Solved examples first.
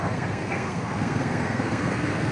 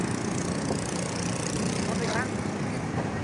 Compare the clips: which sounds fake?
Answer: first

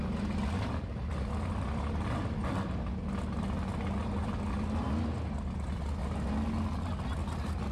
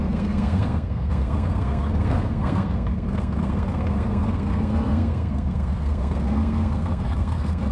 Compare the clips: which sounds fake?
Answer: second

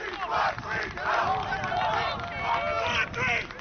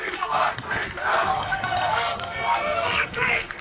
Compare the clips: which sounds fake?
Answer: second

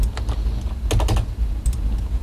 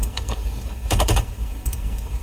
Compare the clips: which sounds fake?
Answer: second